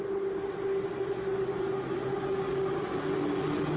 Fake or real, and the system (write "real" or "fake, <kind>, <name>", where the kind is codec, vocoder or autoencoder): real